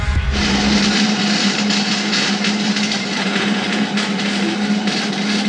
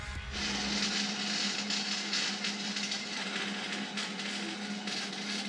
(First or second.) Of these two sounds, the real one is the second